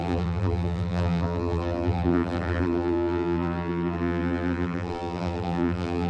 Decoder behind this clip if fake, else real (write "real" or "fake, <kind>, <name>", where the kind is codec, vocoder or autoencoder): fake, vocoder, BigVGAN v2